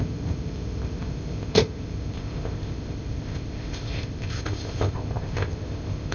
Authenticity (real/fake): fake